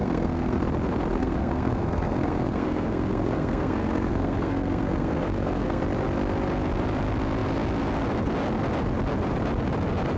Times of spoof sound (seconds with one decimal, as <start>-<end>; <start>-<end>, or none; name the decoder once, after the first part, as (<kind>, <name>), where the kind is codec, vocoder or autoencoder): 0.0-0.6 (codec, SNAC); 1.1-5.8